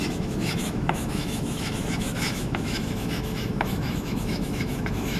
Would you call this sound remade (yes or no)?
yes